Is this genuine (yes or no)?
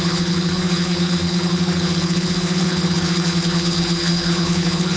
no